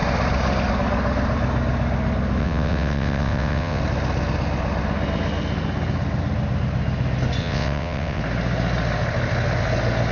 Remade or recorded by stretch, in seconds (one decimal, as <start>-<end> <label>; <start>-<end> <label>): 0.0-2.4 recorded; 2.4-3.8 remade; 3.8-7.4 recorded; 7.4-8.2 remade; 8.2-10.1 recorded